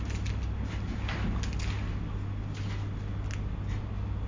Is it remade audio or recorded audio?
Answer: recorded